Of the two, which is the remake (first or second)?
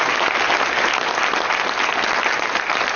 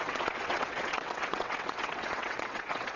second